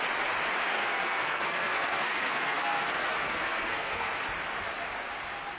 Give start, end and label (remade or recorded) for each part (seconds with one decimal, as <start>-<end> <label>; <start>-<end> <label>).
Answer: 0.0-0.7 recorded; 0.7-4.1 remade; 4.1-5.6 recorded